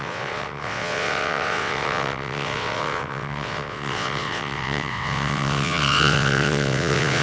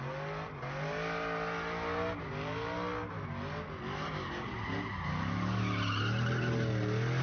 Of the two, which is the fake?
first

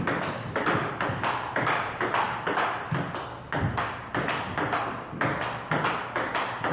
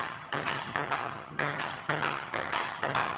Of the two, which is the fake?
second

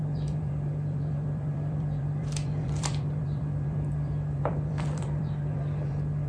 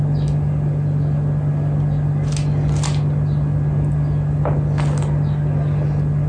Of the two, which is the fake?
first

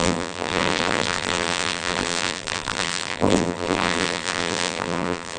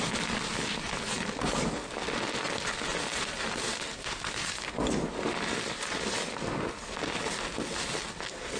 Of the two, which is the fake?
first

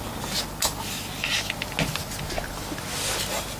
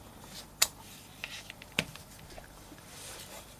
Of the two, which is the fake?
second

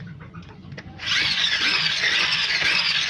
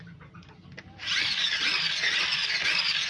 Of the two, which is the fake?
first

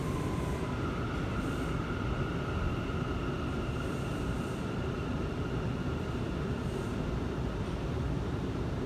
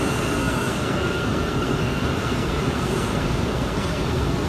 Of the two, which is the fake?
second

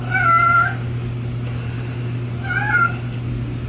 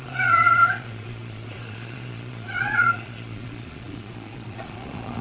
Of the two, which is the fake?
second